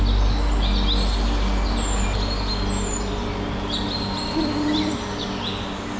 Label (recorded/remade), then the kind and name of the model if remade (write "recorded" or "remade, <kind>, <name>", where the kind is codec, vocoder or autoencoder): recorded